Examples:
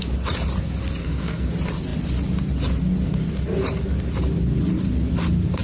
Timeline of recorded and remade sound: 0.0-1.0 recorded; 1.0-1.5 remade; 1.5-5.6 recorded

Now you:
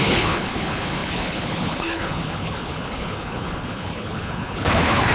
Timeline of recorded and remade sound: 0.0-5.1 remade